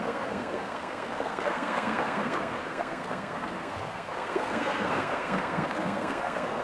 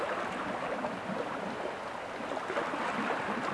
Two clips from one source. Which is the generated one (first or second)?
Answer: first